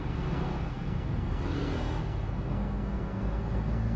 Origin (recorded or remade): remade